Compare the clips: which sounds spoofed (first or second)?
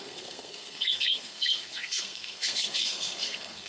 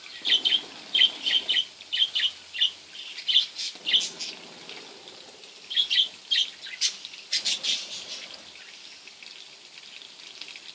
first